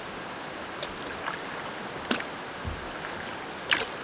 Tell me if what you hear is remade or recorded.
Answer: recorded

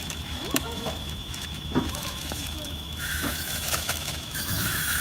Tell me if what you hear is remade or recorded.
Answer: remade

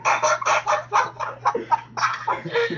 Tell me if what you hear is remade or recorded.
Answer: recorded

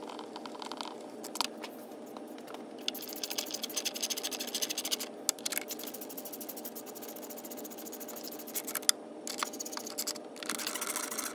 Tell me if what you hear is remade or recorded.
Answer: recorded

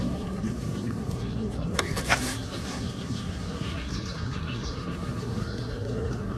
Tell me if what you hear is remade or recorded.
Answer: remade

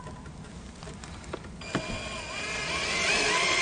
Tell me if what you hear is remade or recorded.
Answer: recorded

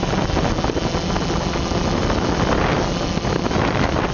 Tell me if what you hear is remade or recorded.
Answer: recorded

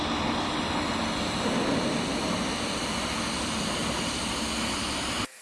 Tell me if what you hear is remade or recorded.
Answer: recorded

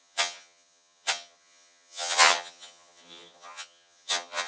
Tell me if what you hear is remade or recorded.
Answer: remade